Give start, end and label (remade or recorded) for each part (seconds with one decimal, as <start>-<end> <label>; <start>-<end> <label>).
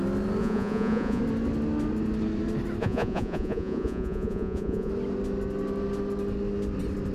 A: 0.0-0.4 recorded; 0.4-1.2 remade; 1.2-2.8 recorded; 2.8-4.9 remade; 4.9-7.1 recorded